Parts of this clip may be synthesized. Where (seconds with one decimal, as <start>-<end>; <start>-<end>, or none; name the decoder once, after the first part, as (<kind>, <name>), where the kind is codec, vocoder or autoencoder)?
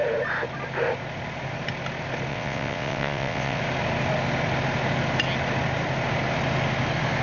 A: 2.3-3.6 (vocoder, WaveNeXt)